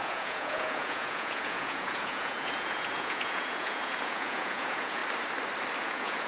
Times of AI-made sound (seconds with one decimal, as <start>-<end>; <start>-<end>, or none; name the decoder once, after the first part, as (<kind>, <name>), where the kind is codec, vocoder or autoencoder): 0.0-5.0 (vocoder, Vocos); 5.8-6.3